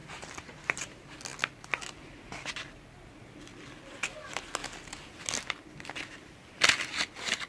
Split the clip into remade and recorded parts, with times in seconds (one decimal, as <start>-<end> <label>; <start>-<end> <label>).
0.0-0.8 remade; 0.8-7.5 recorded